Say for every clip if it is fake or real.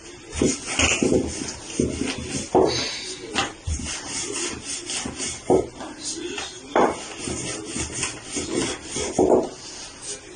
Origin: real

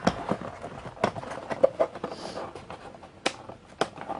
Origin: real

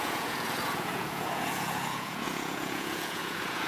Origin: fake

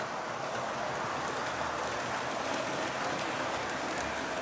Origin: fake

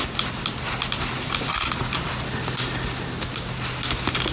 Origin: real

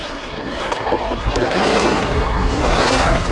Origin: fake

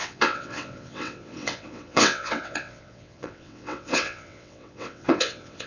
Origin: fake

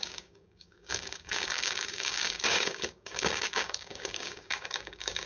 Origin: fake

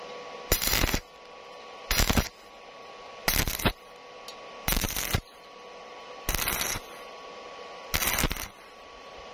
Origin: real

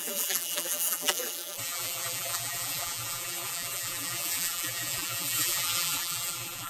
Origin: fake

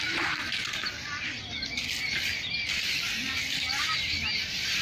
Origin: real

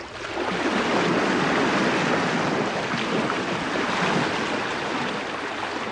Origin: real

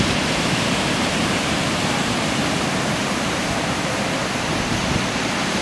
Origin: fake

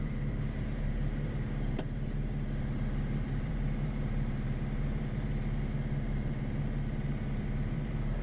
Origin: fake